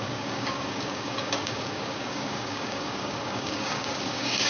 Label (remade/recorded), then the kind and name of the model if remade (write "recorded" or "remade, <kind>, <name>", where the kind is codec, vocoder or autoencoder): remade, codec, DAC